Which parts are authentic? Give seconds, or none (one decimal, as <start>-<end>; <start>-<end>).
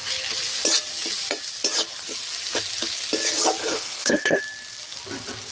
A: 0.0-3.6; 4.4-5.5